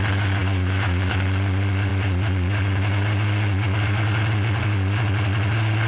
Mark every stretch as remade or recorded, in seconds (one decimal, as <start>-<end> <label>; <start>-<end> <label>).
0.0-0.4 recorded; 0.4-1.1 remade; 1.1-5.9 recorded